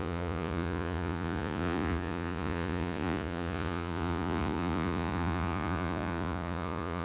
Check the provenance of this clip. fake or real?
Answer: fake